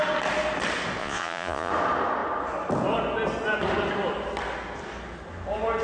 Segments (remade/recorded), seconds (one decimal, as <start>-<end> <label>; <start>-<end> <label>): 0.0-1.0 recorded; 1.0-1.7 remade; 1.7-5.8 recorded